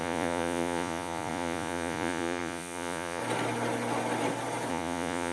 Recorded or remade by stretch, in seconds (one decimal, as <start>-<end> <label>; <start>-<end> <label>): 0.0-3.2 remade; 3.2-4.7 recorded; 4.7-5.3 remade